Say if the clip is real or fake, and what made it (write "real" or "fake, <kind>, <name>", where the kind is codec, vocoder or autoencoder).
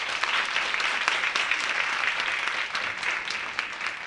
real